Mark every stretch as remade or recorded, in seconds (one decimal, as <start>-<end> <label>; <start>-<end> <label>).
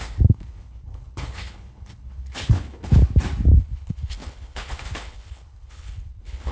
0.0-3.0 remade; 3.0-3.6 recorded; 3.6-6.5 remade